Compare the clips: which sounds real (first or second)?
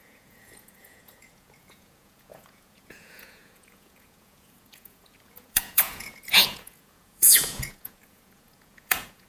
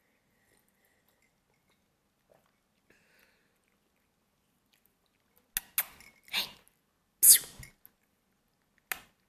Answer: second